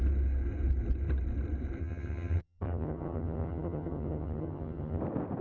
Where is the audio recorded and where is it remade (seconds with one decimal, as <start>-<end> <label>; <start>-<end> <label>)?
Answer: 0.0-1.8 recorded; 1.8-5.0 remade; 5.0-5.4 recorded